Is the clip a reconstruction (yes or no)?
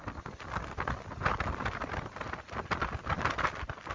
no